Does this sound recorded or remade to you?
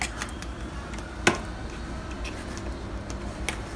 recorded